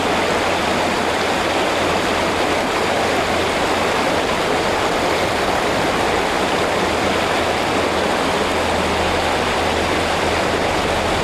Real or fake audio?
real